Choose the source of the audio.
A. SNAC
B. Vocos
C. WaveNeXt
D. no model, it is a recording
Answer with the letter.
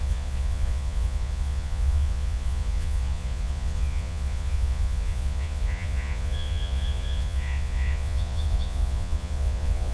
B